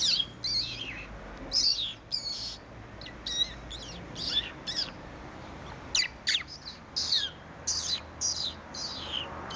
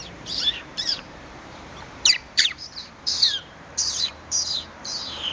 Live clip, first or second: first